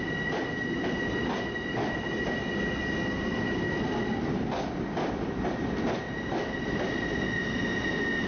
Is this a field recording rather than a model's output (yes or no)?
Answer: yes